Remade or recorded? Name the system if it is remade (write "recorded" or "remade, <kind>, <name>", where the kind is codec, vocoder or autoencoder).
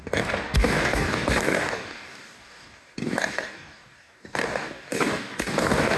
remade, codec, DAC